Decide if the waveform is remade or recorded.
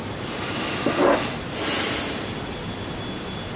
recorded